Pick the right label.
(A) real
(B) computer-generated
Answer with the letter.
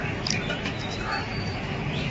B